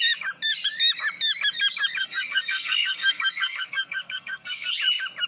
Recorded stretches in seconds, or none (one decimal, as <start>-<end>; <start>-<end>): 0.0-2.0; 4.7-5.3